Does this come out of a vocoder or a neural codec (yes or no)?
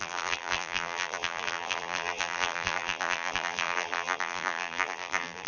yes